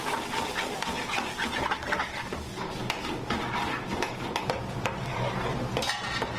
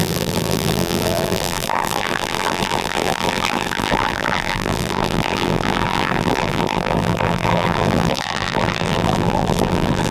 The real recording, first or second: first